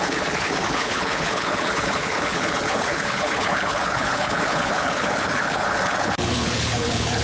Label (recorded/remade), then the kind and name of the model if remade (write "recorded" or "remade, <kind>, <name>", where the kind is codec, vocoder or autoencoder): remade, codec, HILCodec